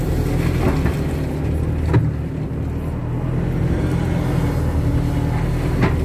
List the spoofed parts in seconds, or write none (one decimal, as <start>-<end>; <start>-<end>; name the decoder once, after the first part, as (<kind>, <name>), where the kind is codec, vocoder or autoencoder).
none